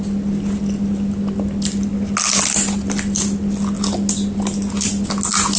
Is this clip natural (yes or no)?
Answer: yes